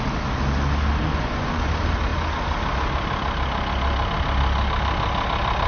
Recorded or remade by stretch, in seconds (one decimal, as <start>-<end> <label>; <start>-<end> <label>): 0.0-1.1 recorded; 1.1-1.7 remade; 1.7-5.7 recorded